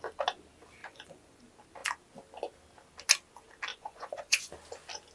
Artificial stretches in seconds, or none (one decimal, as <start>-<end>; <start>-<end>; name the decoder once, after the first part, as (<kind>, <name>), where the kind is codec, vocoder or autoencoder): 0.8-1.4 (vocoder, Vocos); 3.7-4.5